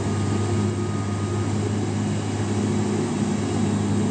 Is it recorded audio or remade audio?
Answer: recorded